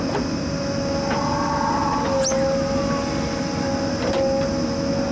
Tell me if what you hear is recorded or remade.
recorded